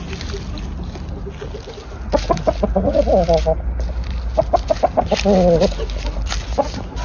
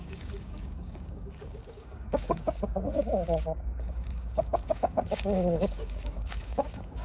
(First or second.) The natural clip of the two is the first